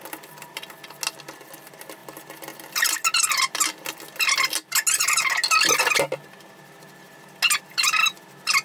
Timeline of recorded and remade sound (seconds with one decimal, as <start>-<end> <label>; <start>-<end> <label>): 0.0-8.6 recorded